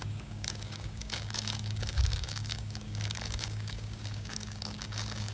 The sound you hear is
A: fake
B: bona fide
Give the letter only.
A